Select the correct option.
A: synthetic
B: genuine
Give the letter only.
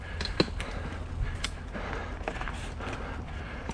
B